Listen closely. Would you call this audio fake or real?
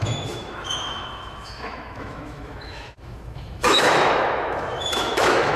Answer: fake